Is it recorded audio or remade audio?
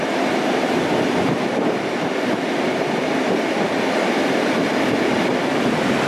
recorded